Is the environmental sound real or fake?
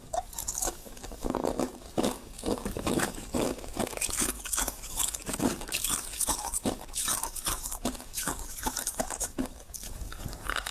fake